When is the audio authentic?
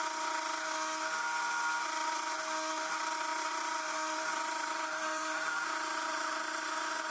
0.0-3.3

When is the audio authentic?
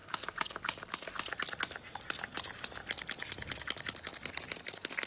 0.0-2.0; 2.8-4.3